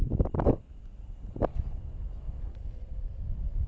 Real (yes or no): yes